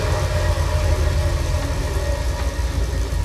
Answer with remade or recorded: recorded